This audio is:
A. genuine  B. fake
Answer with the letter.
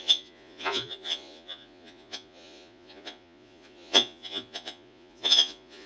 B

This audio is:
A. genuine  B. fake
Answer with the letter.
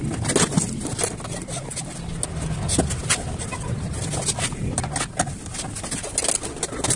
A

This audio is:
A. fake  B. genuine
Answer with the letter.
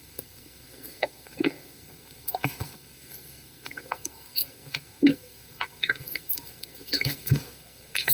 A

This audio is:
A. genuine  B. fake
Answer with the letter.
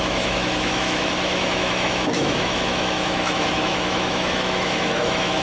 B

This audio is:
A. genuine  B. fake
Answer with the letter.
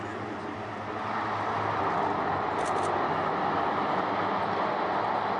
A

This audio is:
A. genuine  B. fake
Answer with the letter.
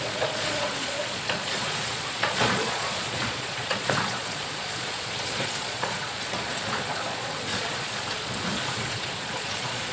B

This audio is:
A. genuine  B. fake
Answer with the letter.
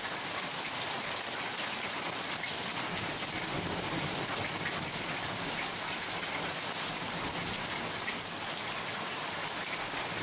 A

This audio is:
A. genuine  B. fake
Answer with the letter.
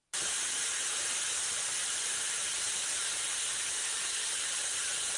A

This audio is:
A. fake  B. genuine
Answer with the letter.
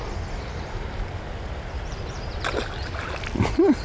B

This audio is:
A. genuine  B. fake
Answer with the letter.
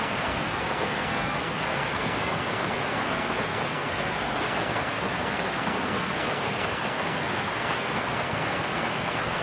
B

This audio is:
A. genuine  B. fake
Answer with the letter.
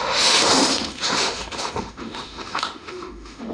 B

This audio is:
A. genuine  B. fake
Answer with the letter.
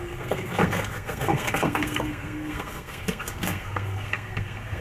B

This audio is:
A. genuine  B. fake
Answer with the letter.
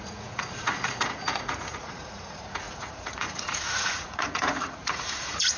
B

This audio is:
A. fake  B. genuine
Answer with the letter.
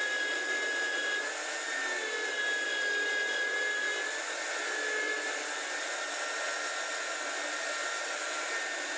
B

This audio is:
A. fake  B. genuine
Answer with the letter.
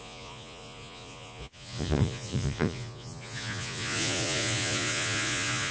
A